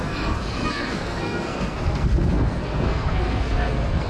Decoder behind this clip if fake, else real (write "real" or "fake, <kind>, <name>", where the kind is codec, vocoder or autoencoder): fake, codec, SNAC